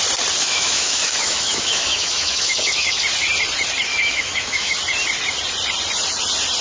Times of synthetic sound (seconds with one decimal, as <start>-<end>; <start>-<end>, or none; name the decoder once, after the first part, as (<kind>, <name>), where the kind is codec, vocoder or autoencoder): 0.4-3.0 (autoencoder, DAC-VAE); 3.9-4.7